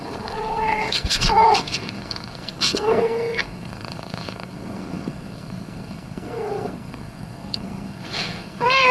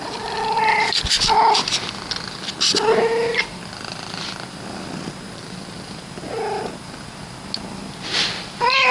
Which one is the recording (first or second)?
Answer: second